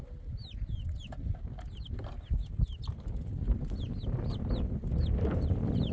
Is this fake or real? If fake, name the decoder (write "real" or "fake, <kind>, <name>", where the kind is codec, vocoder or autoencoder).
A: real